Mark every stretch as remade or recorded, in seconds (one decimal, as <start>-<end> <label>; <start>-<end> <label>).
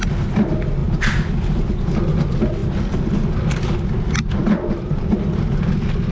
0.0-0.8 recorded; 0.8-1.4 remade; 1.4-4.4 recorded; 4.4-4.9 remade; 4.9-6.1 recorded